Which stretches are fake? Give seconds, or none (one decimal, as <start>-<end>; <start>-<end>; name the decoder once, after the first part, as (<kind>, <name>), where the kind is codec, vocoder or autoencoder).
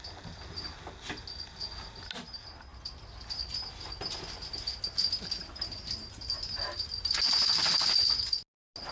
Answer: none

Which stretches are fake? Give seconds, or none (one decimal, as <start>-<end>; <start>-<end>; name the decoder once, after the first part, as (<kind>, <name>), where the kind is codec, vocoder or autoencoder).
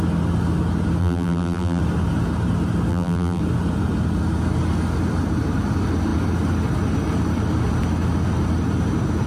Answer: 1.0-1.8 (vocoder, BigVGAN v2); 2.9-3.4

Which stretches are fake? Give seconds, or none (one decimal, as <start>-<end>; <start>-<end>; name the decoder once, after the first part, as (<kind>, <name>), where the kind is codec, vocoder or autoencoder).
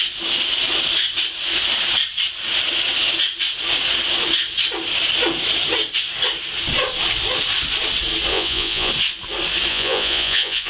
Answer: 8.3-8.9 (vocoder, Vocos); 9.7-10.7